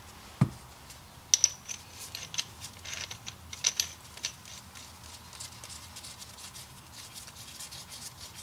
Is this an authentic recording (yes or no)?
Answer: yes